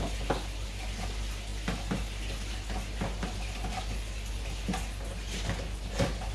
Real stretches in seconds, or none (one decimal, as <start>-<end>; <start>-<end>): 0.0-6.3